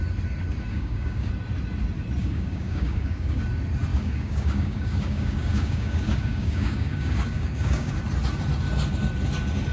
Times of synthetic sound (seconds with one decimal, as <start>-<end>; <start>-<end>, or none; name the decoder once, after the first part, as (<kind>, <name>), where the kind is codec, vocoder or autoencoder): 0.7-1.3 (codec, DAC); 2.2-3.4; 3.9-7.9